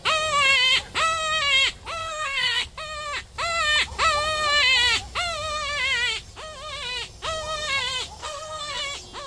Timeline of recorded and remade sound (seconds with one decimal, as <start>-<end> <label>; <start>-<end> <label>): 0.0-2.0 recorded; 2.0-2.7 remade; 2.7-8.2 recorded; 8.2-8.8 remade; 8.8-9.3 recorded